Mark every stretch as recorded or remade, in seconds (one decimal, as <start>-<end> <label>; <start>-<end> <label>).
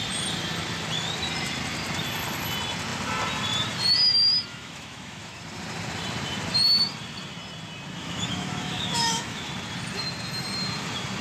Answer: 0.0-4.5 recorded; 4.5-5.4 remade; 5.4-8.0 recorded; 8.0-9.5 remade; 9.5-11.2 recorded